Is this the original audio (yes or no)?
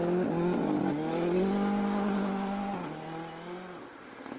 yes